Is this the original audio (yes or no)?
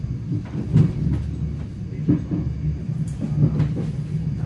yes